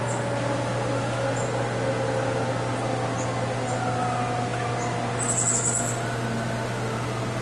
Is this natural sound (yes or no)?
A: yes